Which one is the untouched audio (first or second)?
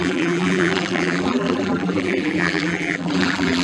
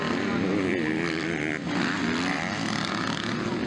second